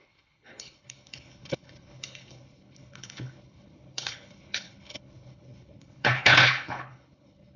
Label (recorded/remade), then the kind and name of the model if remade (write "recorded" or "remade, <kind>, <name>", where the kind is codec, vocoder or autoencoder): remade, codec, HILCodec